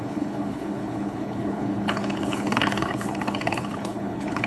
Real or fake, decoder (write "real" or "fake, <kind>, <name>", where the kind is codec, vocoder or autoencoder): fake, codec, HILCodec